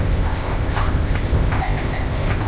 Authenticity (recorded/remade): remade